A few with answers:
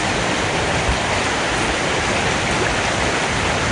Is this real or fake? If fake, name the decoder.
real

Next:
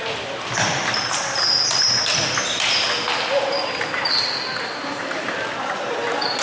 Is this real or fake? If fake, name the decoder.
real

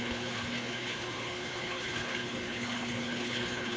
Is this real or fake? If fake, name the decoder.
fake, codec, HILCodec